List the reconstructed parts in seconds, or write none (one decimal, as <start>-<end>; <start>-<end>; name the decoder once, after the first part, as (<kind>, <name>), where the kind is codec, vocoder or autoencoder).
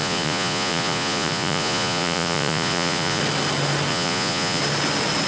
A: 0.0-3.2 (vocoder, Vocos); 3.9-4.6